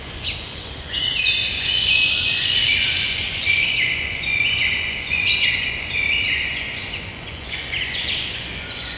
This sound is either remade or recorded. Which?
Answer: remade